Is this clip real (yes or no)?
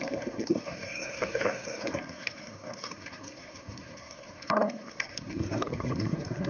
no